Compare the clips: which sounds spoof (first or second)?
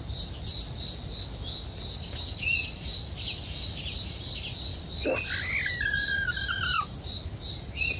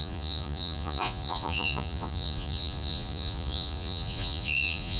second